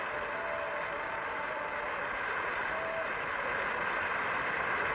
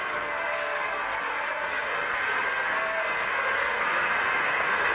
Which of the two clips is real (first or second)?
first